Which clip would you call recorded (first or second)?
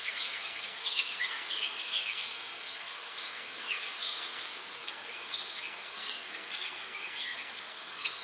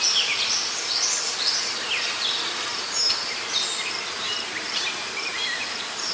second